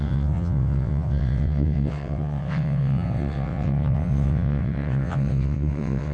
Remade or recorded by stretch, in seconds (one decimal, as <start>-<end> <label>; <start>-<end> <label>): 0.0-6.1 remade